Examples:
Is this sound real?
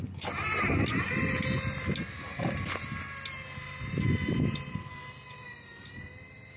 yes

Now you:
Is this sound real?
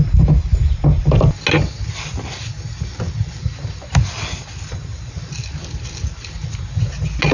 yes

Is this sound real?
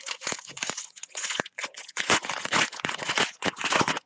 no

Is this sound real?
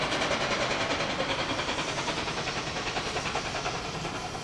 no